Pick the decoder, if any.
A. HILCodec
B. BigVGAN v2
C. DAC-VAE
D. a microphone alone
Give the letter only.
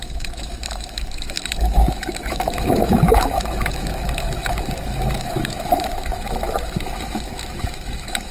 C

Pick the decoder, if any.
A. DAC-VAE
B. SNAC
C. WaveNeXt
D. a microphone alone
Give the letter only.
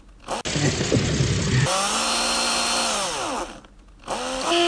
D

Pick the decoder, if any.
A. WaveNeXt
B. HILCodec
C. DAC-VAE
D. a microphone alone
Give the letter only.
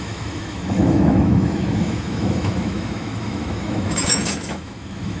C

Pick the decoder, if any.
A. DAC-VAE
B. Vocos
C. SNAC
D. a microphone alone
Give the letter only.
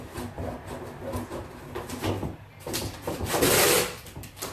D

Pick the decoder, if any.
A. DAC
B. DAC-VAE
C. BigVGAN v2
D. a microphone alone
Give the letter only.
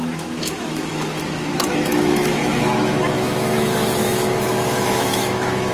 B